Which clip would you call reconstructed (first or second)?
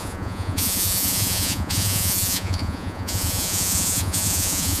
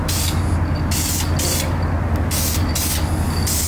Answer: first